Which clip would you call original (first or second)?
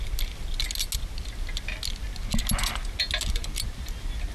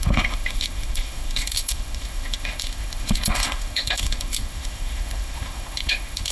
first